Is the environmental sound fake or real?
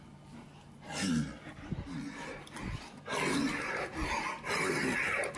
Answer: real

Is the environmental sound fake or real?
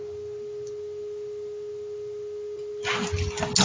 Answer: real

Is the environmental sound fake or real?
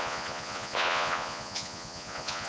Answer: fake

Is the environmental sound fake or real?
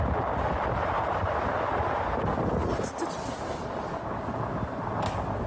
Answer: real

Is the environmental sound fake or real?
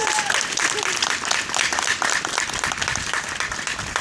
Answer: real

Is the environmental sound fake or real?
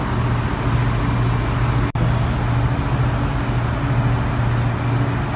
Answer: real